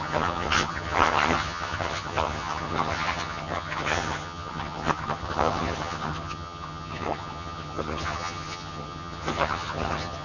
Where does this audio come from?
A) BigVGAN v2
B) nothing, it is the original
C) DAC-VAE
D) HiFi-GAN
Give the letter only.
D